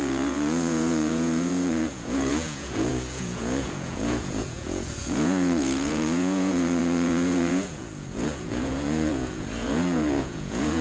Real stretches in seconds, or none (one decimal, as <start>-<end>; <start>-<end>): none